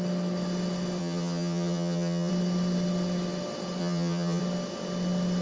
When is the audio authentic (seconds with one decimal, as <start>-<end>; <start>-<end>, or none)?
0.0-1.0; 2.3-3.8; 4.4-5.4

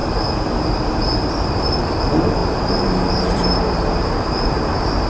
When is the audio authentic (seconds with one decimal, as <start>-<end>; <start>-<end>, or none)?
2.0-2.4

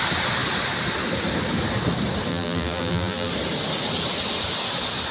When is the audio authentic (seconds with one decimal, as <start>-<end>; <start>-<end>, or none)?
0.0-2.3; 3.3-5.1

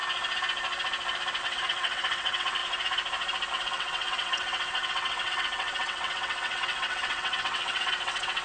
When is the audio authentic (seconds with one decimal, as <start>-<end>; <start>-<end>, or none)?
0.0-1.4; 2.6-3.5

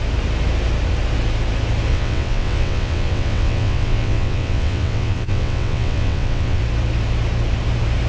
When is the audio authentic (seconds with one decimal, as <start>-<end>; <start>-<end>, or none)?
0.0-1.9; 6.6-8.1

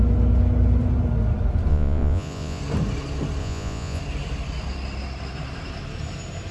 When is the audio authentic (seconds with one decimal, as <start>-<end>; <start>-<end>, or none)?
0.0-1.7; 2.6-3.4; 4.0-6.5

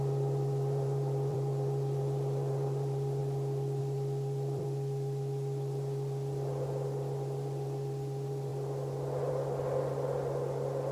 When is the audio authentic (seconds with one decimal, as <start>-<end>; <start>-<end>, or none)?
3.2-3.8; 8.5-9.3

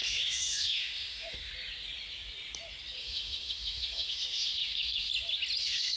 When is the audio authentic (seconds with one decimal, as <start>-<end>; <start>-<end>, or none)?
1.5-3.0; 5.1-5.6